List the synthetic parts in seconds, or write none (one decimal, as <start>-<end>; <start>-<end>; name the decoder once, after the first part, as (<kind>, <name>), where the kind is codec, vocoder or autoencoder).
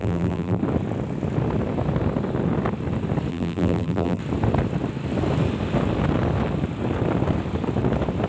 0.0-0.6 (vocoder, BigVGAN v2); 3.3-4.2